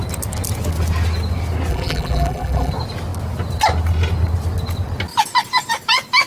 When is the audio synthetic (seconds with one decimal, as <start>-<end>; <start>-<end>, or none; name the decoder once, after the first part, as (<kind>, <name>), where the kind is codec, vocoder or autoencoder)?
1.7-2.7 (vocoder, BigVGAN v2)